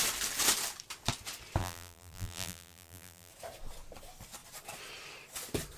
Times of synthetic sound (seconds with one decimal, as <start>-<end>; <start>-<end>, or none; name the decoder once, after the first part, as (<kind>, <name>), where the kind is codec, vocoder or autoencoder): 1.6-3.3 (vocoder, BigVGAN v2)